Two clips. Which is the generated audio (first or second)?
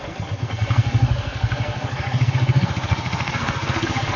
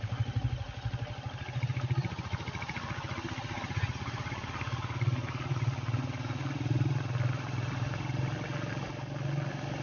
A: first